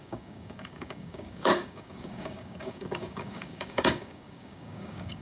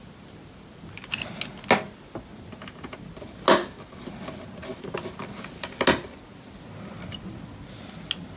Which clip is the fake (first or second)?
first